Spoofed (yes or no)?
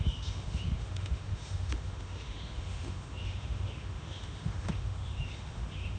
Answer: yes